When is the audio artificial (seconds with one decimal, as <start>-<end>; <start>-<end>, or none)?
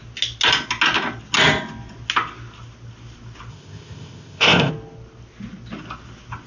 3.5-4.7